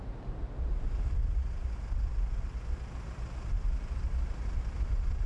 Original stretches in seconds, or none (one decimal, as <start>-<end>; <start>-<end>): 0.0-5.3